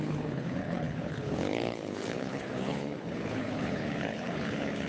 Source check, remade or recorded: remade